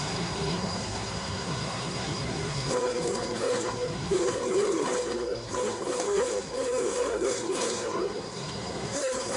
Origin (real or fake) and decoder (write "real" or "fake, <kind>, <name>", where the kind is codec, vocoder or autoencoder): fake, codec, SNAC